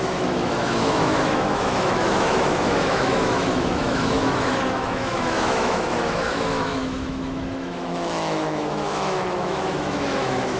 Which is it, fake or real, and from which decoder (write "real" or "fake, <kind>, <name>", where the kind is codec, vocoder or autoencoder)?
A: fake, autoencoder, DAC-VAE